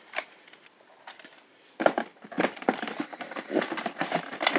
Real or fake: fake